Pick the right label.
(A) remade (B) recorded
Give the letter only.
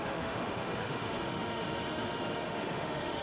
A